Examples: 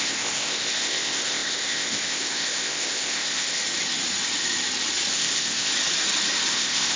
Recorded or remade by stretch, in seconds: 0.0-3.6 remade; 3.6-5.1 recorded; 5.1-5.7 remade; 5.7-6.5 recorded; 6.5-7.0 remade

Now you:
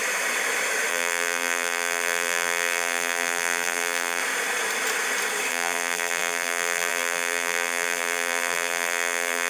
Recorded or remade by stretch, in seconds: 0.0-0.9 recorded; 0.9-4.2 remade; 4.2-5.5 recorded; 5.5-9.5 remade

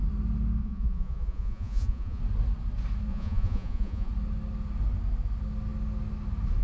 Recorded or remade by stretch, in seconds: 0.0-0.6 recorded; 0.6-2.2 remade; 2.2-3.1 recorded; 3.1-4.1 remade; 4.1-6.6 recorded